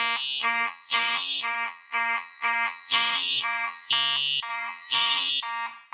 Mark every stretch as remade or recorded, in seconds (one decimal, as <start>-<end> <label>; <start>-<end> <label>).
0.0-0.4 recorded; 0.4-3.9 remade; 3.9-4.5 recorded; 4.5-5.3 remade; 5.3-5.9 recorded